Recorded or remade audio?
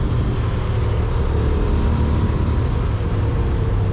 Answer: recorded